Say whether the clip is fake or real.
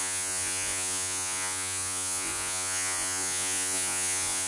fake